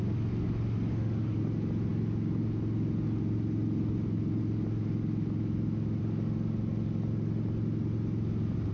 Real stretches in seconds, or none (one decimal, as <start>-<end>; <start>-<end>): 0.0-0.9; 1.4-8.7